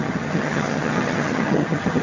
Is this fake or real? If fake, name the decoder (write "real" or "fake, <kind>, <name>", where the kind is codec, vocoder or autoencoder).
fake, vocoder, HiFi-GAN